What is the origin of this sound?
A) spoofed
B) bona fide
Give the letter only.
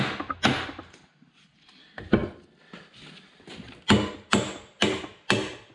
B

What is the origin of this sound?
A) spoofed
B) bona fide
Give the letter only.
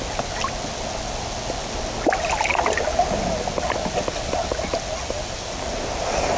B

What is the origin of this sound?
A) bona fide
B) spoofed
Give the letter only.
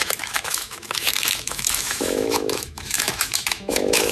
B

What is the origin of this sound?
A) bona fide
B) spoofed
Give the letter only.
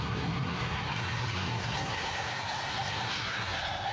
B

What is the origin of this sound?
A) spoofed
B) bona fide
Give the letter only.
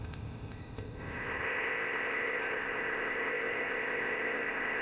A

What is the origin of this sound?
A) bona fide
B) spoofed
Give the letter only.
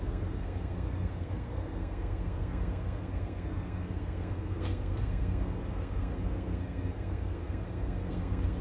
B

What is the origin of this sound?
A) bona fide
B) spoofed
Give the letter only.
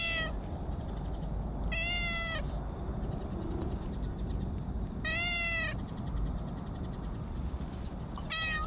A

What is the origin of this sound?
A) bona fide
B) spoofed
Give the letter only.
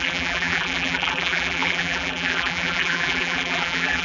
B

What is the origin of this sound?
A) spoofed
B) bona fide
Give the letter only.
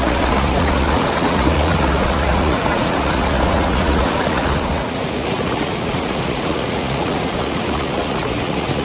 A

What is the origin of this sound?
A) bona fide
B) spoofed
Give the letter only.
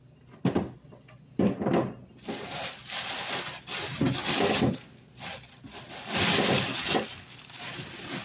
A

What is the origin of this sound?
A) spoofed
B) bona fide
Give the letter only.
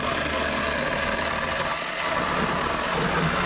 B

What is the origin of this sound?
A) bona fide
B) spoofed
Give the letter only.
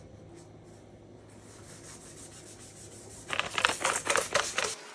A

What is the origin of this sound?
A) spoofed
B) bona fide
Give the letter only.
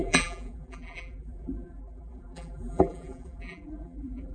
A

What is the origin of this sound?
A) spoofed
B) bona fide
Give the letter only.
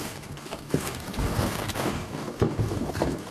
A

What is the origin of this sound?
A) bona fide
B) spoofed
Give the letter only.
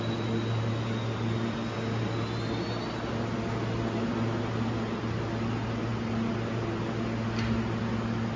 A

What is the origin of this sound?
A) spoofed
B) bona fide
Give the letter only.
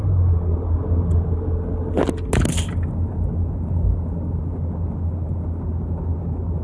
B